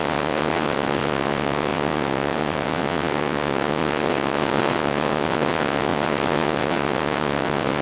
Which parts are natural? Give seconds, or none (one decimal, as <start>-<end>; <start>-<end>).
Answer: none